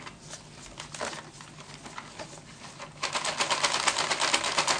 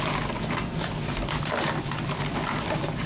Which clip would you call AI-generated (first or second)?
second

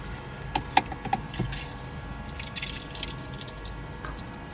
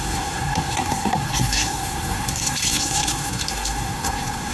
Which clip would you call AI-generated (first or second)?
second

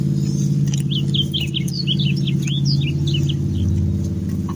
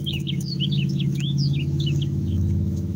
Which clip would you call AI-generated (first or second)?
second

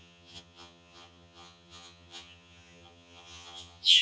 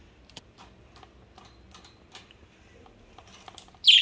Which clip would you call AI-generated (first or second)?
first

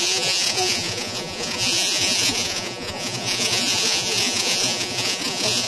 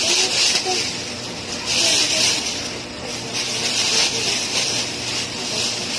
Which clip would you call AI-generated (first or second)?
first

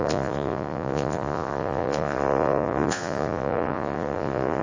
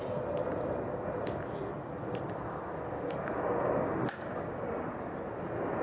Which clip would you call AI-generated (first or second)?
first